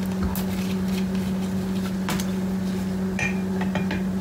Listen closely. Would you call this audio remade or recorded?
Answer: recorded